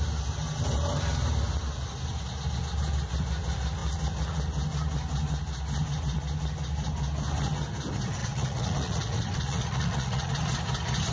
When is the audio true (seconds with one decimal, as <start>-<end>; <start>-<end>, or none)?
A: 0.0-8.2; 10.3-11.1